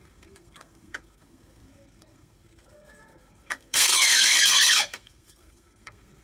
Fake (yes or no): yes